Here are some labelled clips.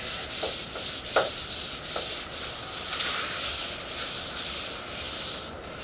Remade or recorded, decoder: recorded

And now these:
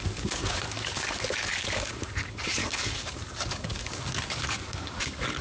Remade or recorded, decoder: remade, codec, DAC